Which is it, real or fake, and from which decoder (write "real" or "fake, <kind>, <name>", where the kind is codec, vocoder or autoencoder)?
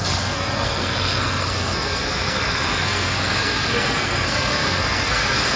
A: fake, codec, SNAC